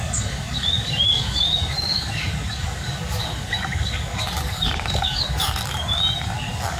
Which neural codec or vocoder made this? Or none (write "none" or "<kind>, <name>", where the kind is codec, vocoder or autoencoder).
codec, DAC